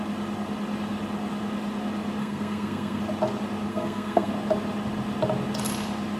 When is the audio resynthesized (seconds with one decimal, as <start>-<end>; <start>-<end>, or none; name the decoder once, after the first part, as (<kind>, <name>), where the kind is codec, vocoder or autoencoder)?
2.2-3.0 (codec, SNAC); 3.7-4.3